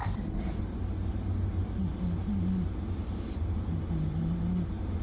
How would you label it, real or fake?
real